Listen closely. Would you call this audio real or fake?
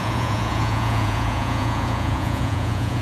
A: fake